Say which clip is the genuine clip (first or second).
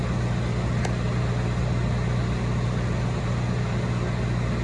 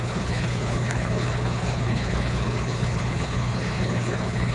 first